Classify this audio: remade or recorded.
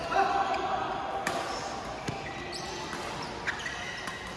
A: recorded